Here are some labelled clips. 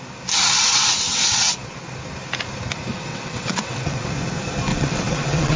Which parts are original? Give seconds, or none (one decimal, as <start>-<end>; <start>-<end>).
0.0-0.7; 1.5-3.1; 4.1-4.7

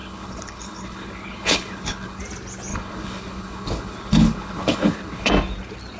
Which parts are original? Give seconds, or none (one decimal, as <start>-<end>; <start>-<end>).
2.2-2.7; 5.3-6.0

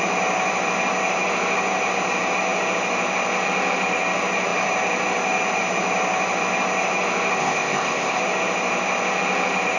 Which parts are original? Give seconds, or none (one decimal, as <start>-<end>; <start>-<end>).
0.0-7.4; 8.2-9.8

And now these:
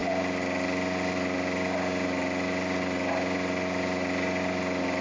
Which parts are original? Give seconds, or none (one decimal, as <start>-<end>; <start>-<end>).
0.0-5.0